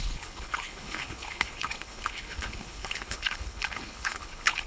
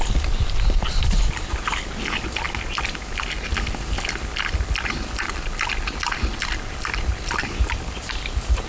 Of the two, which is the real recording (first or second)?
second